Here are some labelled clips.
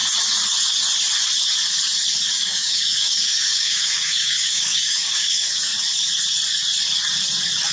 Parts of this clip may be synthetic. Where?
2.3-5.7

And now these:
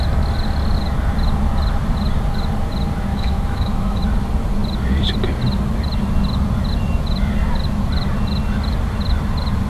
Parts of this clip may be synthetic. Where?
3.1-4.0